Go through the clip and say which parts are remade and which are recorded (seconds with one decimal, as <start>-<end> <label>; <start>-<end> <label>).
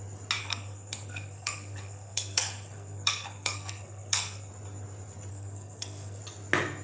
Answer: 0.0-0.4 recorded; 0.4-4.5 remade; 4.5-5.3 recorded; 5.3-6.2 remade; 6.2-6.8 recorded